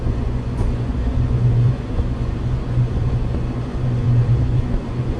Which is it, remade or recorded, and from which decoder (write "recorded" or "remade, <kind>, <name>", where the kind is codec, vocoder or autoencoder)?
remade, vocoder, Vocos